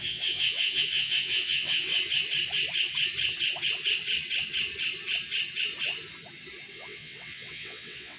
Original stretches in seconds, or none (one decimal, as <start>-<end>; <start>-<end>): 1.9-6.7